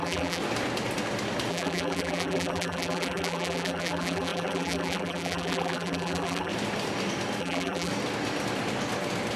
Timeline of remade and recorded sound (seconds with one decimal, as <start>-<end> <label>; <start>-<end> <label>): 0.0-0.4 remade; 0.4-1.5 recorded; 1.5-6.5 remade; 6.5-7.4 recorded; 7.4-7.9 remade; 7.9-9.4 recorded